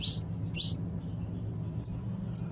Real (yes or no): yes